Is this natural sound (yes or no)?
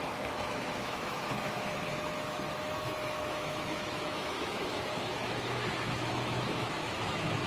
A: no